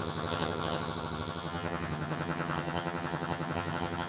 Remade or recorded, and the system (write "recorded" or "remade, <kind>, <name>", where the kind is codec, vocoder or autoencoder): remade, vocoder, HiFi-GAN